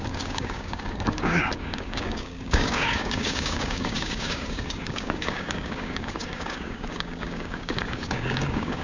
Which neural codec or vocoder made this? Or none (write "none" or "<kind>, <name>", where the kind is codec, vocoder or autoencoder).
codec, DAC